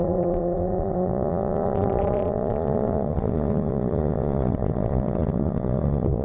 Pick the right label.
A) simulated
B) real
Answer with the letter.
A